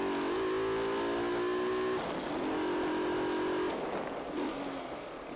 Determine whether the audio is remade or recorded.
recorded